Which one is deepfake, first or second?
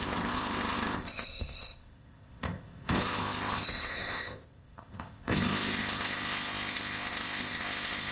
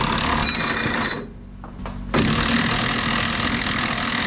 first